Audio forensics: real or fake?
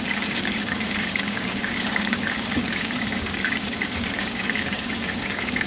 fake